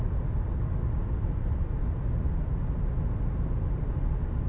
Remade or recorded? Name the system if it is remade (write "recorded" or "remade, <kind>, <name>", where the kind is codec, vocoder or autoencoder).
recorded